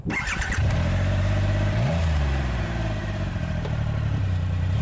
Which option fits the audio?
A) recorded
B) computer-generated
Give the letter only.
B